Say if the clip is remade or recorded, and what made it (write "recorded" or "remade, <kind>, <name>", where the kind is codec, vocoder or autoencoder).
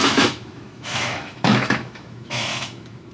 remade, autoencoder, DAC-VAE